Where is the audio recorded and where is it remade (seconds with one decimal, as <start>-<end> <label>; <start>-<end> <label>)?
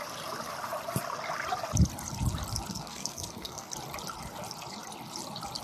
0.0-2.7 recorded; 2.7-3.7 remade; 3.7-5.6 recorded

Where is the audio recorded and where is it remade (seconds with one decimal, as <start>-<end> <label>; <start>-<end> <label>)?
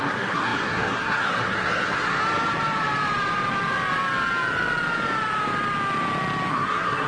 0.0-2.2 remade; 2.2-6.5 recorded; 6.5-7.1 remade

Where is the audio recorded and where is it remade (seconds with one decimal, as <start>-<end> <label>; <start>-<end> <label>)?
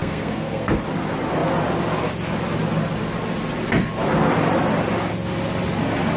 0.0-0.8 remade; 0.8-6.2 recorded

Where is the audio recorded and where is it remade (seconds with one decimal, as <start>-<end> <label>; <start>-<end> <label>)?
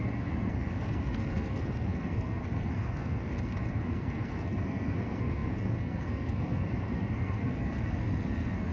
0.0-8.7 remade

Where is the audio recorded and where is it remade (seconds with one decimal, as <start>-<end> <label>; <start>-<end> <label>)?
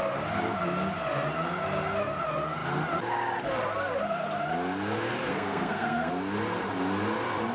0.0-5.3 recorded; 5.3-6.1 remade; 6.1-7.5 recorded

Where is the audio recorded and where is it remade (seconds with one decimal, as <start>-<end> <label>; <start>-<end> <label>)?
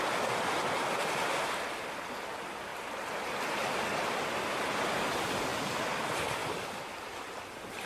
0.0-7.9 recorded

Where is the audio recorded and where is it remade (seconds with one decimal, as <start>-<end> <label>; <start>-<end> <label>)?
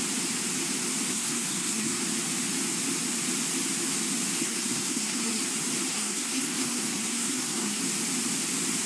0.0-1.1 recorded; 1.1-2.0 remade; 2.0-4.4 recorded; 4.4-5.4 remade; 5.4-5.9 recorded; 5.9-7.8 remade; 7.8-8.9 recorded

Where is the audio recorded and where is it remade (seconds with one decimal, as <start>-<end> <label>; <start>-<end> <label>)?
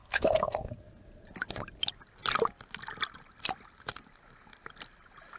0.0-0.7 remade; 0.7-5.4 recorded